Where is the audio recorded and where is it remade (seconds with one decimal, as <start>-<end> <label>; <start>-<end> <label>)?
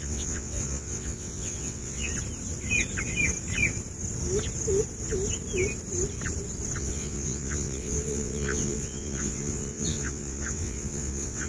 0.0-2.1 remade; 2.1-6.8 recorded; 6.8-11.5 remade